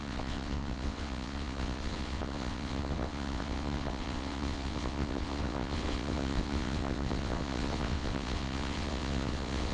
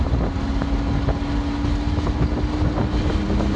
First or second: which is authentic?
second